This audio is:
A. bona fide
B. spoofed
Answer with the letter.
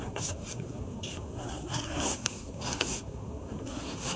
B